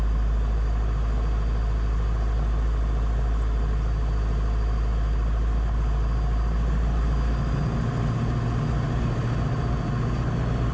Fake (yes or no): no